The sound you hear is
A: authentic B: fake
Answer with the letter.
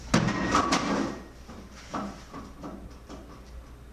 A